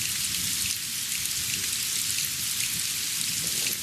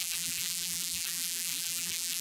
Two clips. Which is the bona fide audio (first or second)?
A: first